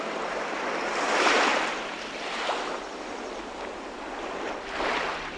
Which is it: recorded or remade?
recorded